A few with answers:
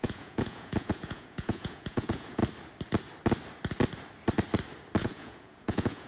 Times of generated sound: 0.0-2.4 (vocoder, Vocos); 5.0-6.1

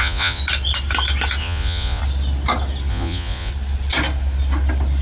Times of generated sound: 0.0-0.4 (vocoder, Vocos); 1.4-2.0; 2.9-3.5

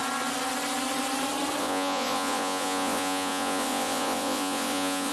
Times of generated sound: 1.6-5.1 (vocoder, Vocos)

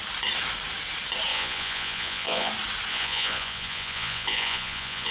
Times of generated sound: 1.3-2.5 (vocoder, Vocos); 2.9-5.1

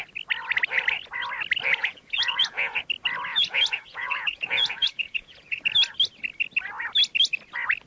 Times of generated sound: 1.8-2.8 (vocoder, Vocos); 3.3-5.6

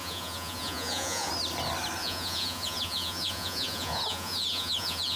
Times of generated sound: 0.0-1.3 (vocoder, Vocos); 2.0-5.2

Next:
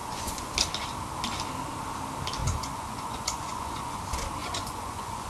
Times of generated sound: 0.0-0.5 (vocoder, Vocos); 2.4-4.0; 4.4-5.3

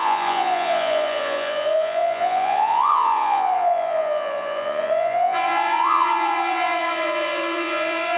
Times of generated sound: 0.0-8.2 (vocoder, Vocos)